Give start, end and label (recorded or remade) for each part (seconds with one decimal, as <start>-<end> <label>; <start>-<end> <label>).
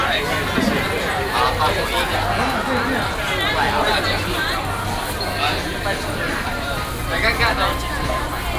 0.0-8.6 recorded